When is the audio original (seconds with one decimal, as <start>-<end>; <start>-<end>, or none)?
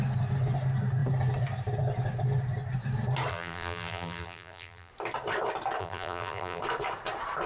0.0-3.3; 4.9-5.8; 6.6-7.5